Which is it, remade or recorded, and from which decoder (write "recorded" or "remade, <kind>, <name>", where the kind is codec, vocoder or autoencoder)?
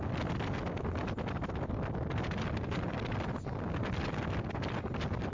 recorded